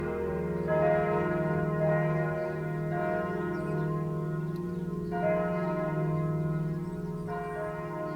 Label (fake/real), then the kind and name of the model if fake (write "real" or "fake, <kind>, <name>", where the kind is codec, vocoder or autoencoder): real